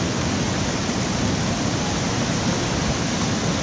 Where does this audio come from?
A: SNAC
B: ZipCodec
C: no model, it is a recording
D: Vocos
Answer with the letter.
C